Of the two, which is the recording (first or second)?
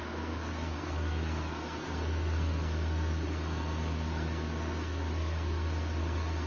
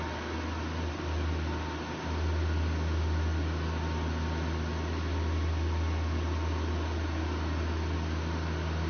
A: second